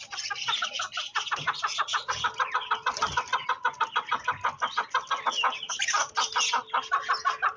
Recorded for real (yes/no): yes